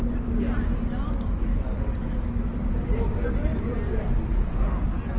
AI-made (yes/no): no